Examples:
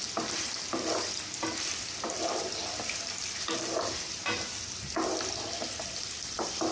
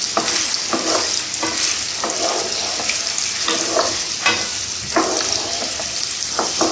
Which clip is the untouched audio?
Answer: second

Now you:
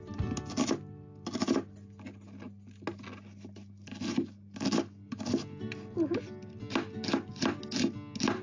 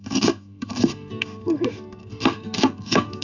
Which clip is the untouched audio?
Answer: first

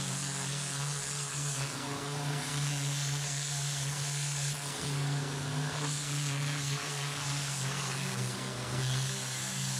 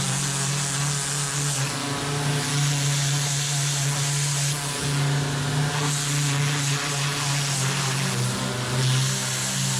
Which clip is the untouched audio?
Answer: second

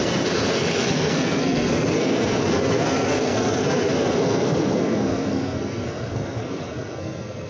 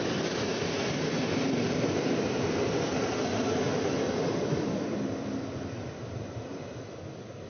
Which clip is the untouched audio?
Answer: second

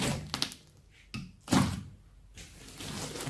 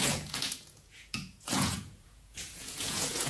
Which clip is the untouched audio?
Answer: first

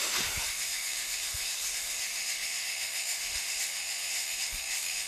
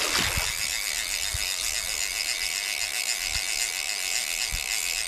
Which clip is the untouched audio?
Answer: second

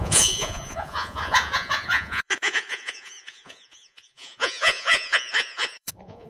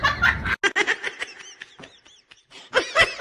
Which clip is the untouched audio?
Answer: second